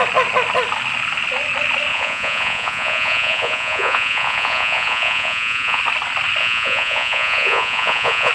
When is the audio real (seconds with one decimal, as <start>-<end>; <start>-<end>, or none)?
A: 0.0-1.9; 5.8-6.4